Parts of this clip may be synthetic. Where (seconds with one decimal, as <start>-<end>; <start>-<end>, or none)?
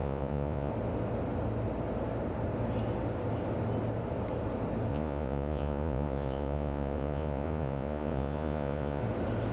0.0-0.7; 4.9-9.0